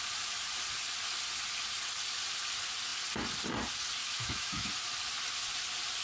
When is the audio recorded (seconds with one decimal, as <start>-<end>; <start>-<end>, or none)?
0.0-4.0; 4.7-6.0